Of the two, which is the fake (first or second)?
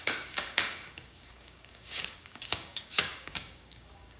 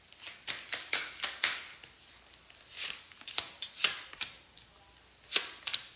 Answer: first